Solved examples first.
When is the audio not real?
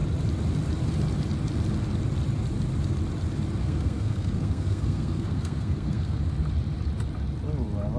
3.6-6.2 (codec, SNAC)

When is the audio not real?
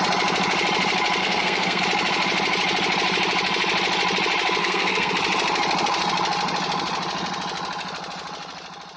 1.2-1.8 (codec, SNAC); 4.6-5.1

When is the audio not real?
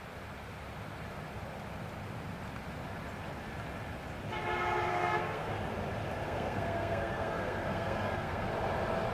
4.9-5.5 (codec, SNAC); 6.2-8.5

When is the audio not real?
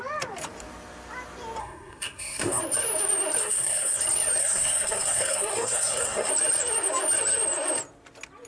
1.6-2.6 (codec, SNAC); 3.4-4.0; 4.4-6.3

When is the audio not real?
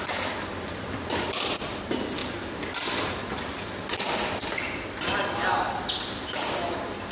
none